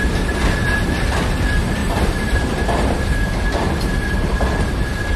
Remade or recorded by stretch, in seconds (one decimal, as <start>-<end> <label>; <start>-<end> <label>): 0.0-1.8 recorded; 1.8-5.2 remade